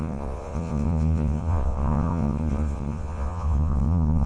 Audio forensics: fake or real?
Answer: fake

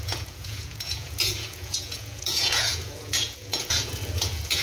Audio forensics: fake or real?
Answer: fake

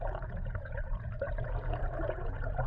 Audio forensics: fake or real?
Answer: fake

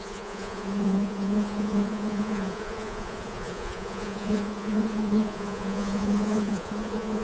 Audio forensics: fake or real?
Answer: fake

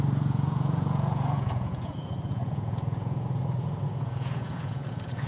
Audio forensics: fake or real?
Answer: fake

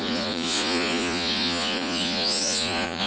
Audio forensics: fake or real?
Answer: fake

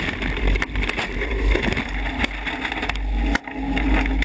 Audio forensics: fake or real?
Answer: real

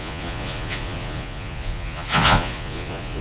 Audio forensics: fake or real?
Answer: fake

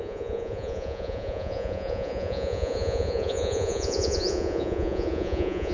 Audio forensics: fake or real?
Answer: fake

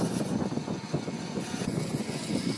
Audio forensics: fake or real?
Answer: fake